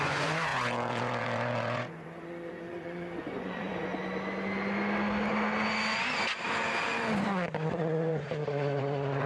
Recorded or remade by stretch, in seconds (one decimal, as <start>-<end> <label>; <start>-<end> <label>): 0.0-3.9 remade; 3.9-8.1 recorded; 8.1-9.3 remade